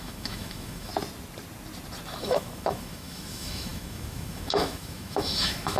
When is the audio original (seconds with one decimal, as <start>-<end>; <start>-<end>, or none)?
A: 0.9-2.2